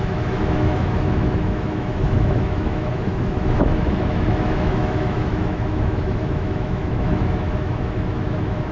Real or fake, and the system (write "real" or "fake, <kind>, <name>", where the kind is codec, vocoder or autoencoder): fake, autoencoder, DAC-VAE